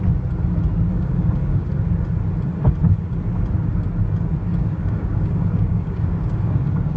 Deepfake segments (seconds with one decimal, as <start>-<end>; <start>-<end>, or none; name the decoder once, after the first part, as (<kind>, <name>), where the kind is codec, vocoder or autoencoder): 0.9-1.7 (codec, DAC); 4.6-7.0